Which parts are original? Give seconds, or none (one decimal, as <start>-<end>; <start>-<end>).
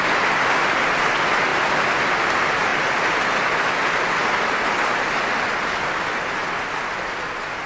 0.0-1.5; 2.3-2.7; 4.7-7.7